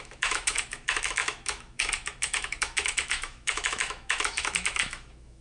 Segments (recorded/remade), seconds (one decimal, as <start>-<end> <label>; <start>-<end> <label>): 0.0-5.4 remade